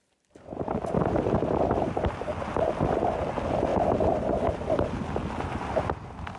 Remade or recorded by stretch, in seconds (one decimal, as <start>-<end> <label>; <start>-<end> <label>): 0.0-6.4 recorded